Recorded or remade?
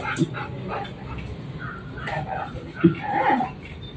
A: recorded